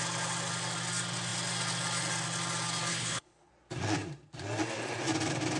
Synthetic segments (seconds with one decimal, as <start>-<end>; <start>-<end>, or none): 2.9-3.5